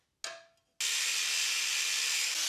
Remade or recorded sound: recorded